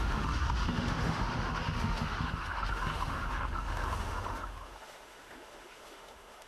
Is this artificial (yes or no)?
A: yes